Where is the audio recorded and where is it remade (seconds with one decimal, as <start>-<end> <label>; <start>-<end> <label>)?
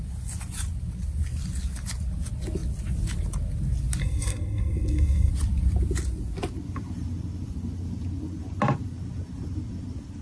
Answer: 0.0-4.0 recorded; 4.0-5.3 remade; 5.3-10.2 recorded